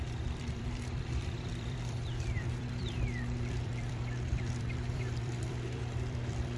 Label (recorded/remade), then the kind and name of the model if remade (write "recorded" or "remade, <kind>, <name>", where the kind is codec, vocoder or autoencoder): remade, vocoder, BigVGAN v2